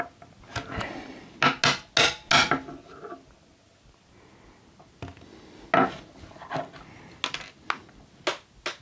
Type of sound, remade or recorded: recorded